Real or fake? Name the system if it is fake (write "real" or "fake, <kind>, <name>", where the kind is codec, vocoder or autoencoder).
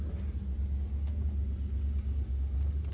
real